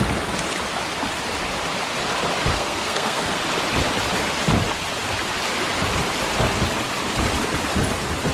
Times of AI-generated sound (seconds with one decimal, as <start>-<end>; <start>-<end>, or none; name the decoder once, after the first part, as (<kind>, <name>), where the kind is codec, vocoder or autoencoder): 2.5-3.4 (codec, SNAC)